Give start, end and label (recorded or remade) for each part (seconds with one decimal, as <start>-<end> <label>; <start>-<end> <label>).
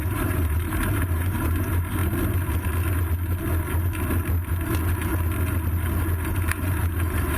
0.0-2.0 remade; 2.0-6.3 recorded; 6.3-7.4 remade